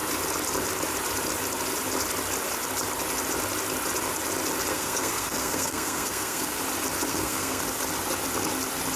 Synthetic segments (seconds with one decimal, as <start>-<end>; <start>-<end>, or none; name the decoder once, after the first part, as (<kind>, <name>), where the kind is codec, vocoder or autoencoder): 4.7-6.6 (codec, SNAC); 7.1-7.6